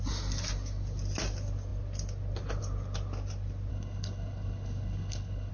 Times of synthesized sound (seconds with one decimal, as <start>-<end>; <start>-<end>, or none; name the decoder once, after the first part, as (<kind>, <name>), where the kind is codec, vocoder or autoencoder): 3.7-5.5 (codec, HILCodec)